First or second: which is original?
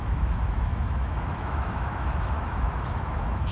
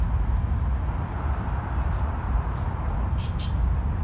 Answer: second